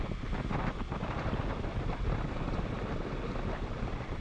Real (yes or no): yes